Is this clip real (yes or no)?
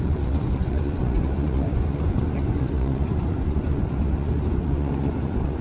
no